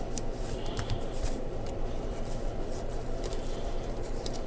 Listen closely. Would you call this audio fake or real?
fake